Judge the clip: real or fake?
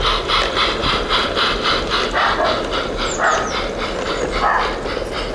real